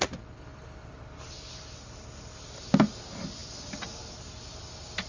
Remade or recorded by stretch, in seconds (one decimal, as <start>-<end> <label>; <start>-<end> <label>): 0.0-5.1 recorded